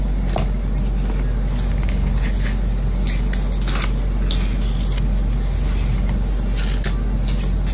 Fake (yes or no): no